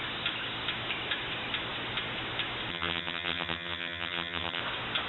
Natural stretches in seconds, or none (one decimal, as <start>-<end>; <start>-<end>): 0.0-2.7; 4.6-5.1